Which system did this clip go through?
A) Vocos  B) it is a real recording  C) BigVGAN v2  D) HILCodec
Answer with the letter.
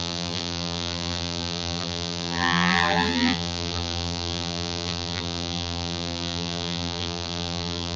C